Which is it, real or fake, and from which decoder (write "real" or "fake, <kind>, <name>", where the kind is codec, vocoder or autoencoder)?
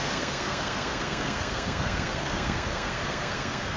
fake, codec, SNAC